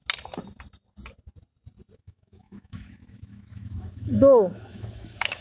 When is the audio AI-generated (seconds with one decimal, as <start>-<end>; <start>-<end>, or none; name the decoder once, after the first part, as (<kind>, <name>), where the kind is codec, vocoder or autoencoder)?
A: 2.0-5.4 (autoencoder, DAC-VAE)